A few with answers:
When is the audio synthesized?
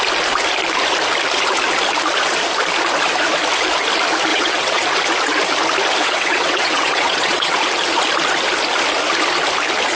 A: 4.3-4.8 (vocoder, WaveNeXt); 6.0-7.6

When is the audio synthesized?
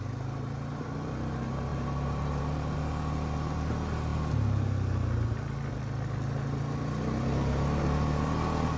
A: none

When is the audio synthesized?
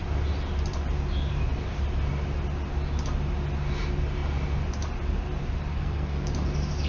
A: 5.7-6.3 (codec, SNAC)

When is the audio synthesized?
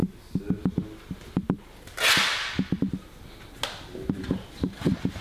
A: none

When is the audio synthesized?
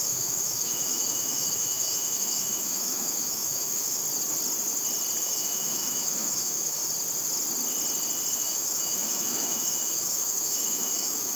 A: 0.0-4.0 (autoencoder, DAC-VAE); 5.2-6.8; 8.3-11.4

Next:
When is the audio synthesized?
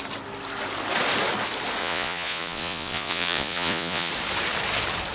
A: 1.8-4.1 (vocoder, Vocos)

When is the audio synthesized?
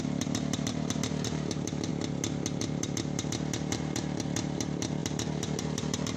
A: 0.0-1.9 (vocoder, BigVGAN v2); 2.6-6.2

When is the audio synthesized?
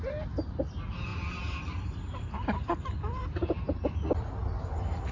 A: 1.1-2.6 (vocoder, BigVGAN v2)